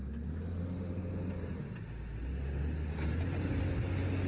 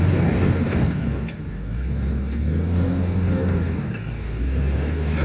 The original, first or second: first